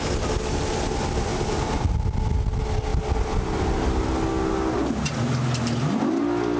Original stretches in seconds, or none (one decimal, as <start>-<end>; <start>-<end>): 0.0-6.6